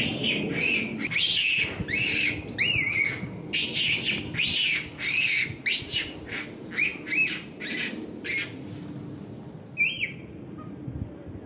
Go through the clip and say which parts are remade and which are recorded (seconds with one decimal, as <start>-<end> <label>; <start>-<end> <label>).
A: 0.0-6.9 recorded; 6.9-7.7 remade; 7.7-11.5 recorded